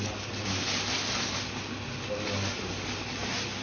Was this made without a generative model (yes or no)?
yes